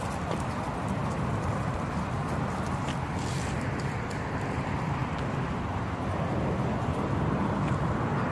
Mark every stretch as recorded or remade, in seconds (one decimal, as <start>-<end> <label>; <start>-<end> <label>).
0.0-1.0 remade; 1.0-1.7 recorded; 1.7-5.0 remade; 5.0-7.1 recorded; 7.1-8.3 remade